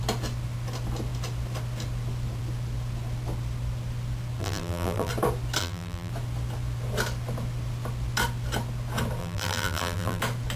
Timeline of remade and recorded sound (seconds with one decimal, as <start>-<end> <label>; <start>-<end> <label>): 0.0-4.4 recorded; 4.4-5.1 remade; 5.1-5.6 recorded; 5.6-6.1 remade; 6.1-9.2 recorded; 9.2-10.2 remade; 10.2-10.6 recorded